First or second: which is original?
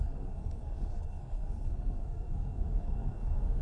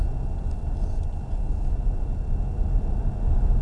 second